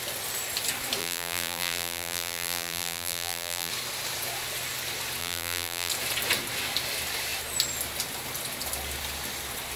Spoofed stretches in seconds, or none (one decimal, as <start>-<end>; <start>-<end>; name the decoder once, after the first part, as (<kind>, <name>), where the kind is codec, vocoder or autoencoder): 1.0-3.7 (vocoder, BigVGAN v2); 5.2-5.9